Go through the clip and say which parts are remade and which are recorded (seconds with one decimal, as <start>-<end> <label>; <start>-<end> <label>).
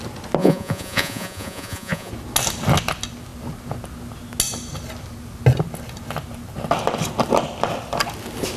0.0-0.4 recorded; 0.4-2.1 remade; 2.1-8.6 recorded